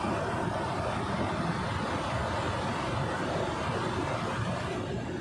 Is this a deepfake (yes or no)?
no